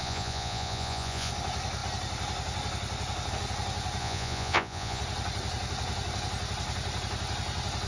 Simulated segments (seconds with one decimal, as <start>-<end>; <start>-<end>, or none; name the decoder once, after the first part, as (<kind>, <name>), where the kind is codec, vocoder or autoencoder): 0.0-1.3 (vocoder, Vocos); 4.0-5.0